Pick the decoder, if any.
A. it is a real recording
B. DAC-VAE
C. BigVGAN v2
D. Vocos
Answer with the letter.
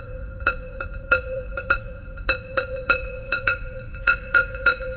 D